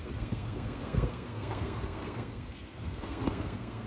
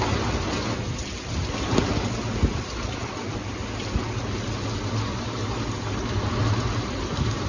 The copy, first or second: first